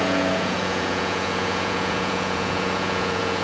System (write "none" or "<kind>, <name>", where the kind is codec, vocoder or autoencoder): vocoder, Vocos